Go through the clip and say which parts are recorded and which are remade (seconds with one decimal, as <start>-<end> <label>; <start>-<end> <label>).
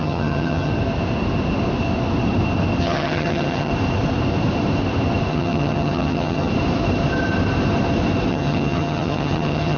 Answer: 0.0-0.7 remade; 0.7-2.8 recorded; 2.8-3.7 remade; 3.7-5.3 recorded; 5.3-6.5 remade; 6.5-8.3 recorded; 8.3-9.8 remade